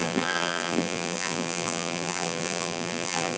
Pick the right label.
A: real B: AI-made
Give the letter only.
B